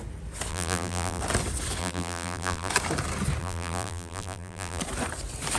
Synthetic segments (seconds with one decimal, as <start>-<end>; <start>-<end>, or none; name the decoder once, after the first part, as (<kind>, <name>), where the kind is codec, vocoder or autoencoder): 0.5-1.2 (vocoder, BigVGAN v2); 1.8-2.7; 3.4-4.8